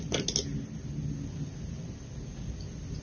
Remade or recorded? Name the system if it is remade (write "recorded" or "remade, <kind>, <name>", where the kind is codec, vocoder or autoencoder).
recorded